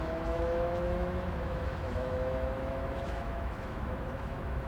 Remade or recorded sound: remade